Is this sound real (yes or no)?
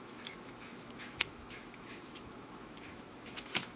no